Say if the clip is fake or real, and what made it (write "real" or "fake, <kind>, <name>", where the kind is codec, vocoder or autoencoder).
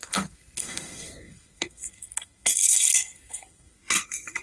fake, codec, SNAC